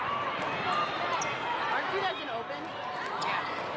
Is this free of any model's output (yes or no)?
yes